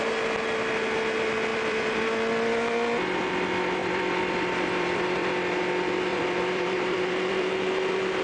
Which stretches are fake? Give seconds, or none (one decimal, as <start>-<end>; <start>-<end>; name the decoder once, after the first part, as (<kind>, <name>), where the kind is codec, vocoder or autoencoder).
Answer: 1.5-2.1 (vocoder, BigVGAN v2); 3.8-5.3; 6.1-7.5